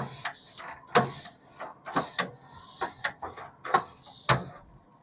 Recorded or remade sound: recorded